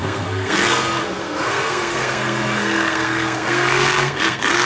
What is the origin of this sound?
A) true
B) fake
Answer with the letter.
B